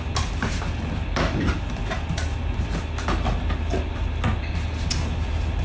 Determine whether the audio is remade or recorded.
recorded